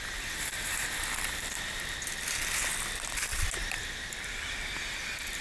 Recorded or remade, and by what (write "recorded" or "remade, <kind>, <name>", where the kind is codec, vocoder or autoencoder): recorded